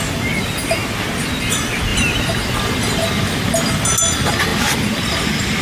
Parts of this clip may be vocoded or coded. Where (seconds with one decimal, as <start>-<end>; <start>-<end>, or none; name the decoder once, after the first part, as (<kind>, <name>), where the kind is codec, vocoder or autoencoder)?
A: none